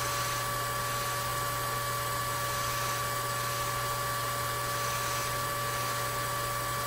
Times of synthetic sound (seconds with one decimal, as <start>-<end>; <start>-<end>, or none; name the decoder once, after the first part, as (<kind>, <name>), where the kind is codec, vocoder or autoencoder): none